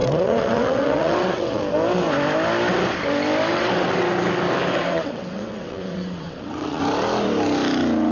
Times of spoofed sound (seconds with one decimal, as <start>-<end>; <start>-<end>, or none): 0.0-1.6; 3.5-4.0; 4.7-6.8

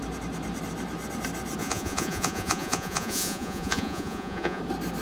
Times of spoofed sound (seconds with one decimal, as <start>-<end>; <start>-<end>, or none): 1.6-4.6

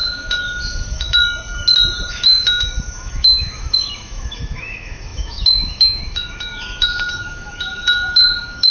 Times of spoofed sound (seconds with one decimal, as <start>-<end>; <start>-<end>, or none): 0.0-1.2; 2.1-8.7

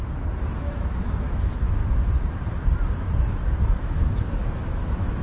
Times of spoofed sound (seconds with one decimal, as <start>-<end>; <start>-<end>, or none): 0.6-1.8; 3.8-5.2

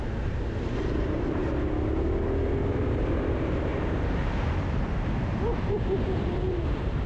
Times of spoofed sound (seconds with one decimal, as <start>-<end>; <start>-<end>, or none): 0.0-1.4; 2.7-7.1